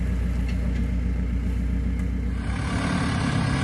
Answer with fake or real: real